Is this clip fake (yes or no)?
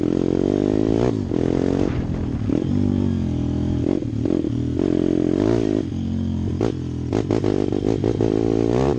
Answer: no